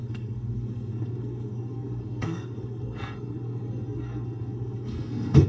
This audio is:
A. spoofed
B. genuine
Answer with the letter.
A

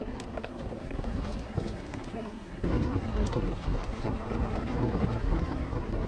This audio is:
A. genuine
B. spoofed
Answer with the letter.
B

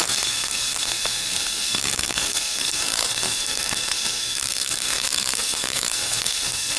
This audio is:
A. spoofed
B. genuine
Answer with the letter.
A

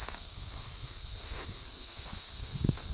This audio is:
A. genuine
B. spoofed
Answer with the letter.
B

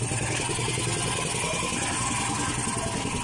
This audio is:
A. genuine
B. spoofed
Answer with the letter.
A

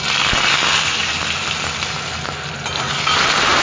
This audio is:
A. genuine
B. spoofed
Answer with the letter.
A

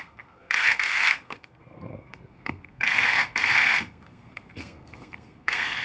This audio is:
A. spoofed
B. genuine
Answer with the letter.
A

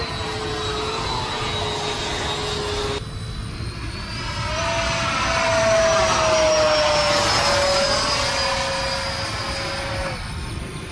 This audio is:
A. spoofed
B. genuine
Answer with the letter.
B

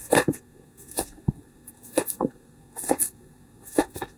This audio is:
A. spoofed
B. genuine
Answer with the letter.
A